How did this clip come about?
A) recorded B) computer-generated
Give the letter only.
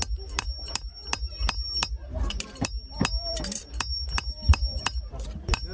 B